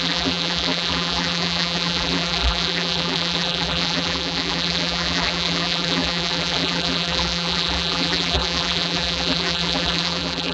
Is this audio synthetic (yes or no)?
yes